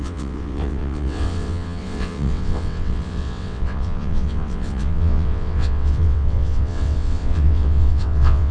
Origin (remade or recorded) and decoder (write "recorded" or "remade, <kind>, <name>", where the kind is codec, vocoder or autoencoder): remade, vocoder, WaveNeXt